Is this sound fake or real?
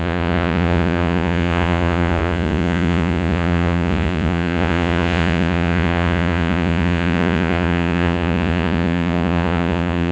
fake